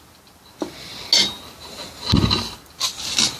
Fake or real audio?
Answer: real